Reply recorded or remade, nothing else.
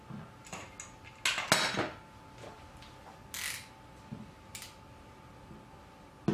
recorded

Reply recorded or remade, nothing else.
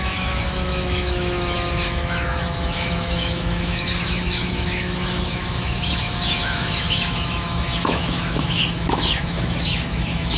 remade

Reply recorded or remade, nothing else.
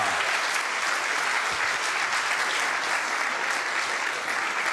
recorded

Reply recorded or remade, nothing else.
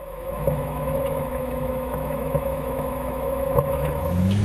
remade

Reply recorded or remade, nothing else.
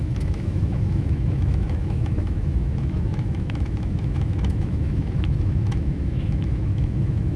remade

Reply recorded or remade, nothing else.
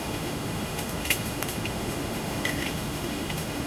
remade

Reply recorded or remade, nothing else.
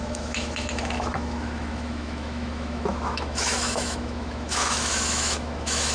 remade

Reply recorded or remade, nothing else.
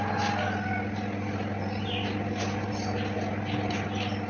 recorded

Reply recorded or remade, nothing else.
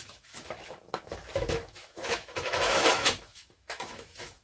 remade